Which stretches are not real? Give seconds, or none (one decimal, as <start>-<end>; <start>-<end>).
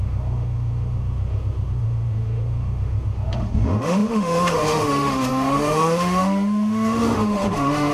0.0-7.9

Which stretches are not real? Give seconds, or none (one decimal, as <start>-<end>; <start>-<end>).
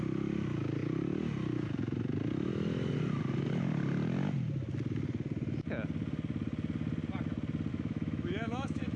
7.7-9.0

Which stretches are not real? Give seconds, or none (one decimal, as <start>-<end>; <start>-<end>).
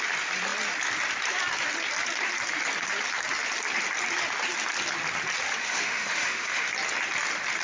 5.6-6.7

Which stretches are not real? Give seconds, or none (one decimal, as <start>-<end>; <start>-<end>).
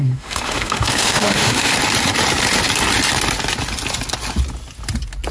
0.0-1.7